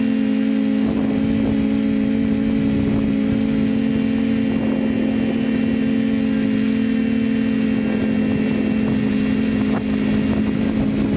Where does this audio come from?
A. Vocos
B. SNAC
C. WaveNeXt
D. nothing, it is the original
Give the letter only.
D